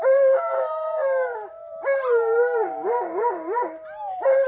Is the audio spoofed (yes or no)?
yes